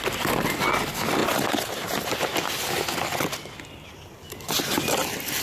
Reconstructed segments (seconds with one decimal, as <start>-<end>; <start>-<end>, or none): none